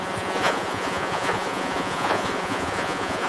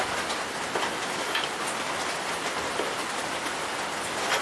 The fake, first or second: first